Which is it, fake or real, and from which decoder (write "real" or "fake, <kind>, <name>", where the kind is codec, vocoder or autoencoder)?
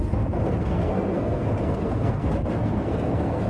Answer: fake, codec, SNAC